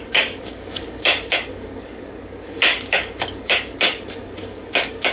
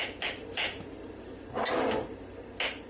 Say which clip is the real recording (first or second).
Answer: second